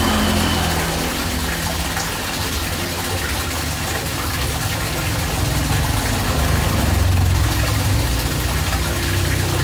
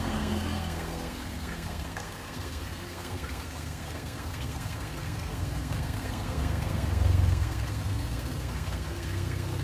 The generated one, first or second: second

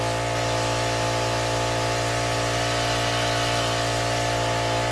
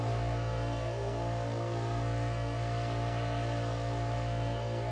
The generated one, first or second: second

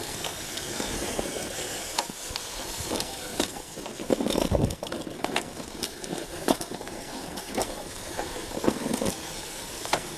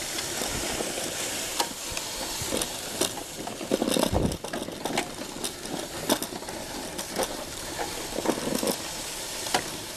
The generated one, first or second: first